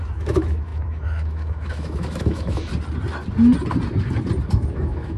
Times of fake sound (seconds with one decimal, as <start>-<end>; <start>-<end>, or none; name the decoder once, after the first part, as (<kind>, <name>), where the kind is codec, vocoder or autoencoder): 0.0-2.7 (autoencoder, DAC-VAE); 4.5-5.2